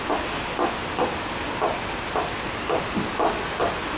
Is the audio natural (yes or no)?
yes